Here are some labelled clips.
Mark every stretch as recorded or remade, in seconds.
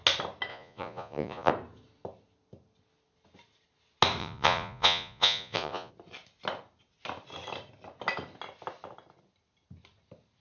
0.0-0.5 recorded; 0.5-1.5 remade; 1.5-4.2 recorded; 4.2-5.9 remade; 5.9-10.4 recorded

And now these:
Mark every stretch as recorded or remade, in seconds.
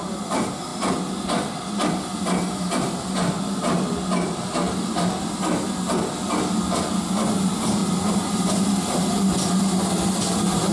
0.0-10.7 recorded